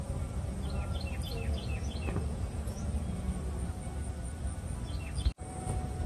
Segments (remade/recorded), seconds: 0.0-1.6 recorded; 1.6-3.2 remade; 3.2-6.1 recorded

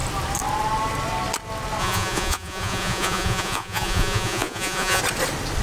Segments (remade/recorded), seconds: 0.0-1.8 recorded; 1.8-5.0 remade; 5.0-5.6 recorded

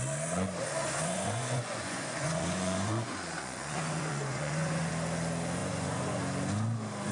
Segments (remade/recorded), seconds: 0.0-0.8 recorded; 0.8-4.9 remade; 4.9-5.6 recorded; 5.6-6.2 remade; 6.2-7.1 recorded

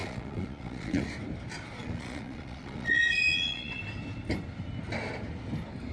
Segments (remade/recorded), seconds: 0.0-1.1 remade; 1.1-1.8 recorded; 1.8-3.8 remade; 3.8-5.9 recorded

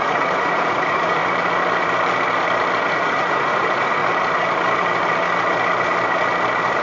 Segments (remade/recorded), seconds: 0.0-1.2 remade; 1.2-2.8 recorded; 2.8-4.0 remade; 4.0-6.8 recorded

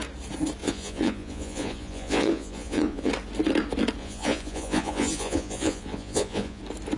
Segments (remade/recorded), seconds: 0.0-0.6 recorded; 0.6-3.1 remade; 3.1-4.0 recorded; 4.0-6.6 remade; 6.6-7.0 recorded